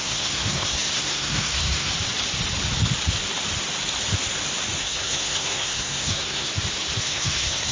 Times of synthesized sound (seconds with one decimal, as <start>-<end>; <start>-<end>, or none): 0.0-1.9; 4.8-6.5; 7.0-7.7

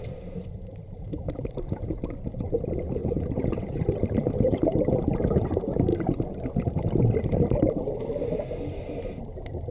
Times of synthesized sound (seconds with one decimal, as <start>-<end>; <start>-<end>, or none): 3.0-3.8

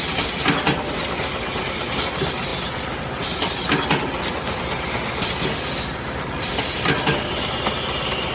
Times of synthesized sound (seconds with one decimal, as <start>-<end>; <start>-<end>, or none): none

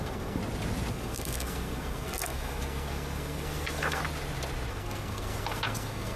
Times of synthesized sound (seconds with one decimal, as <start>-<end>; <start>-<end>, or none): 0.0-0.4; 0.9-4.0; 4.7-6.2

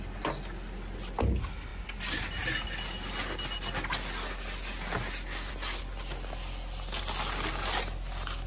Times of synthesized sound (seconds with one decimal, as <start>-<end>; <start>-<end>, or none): none

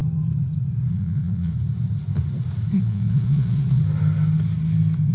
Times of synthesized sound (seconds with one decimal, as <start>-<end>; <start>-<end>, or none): 0.9-1.5; 2.8-3.8

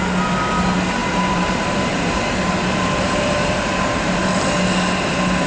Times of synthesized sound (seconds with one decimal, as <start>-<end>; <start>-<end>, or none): 1.0-4.3

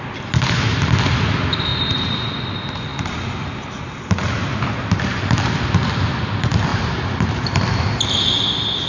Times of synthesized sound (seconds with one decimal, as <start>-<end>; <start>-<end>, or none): 1.7-2.3; 2.9-5.5; 6.7-7.6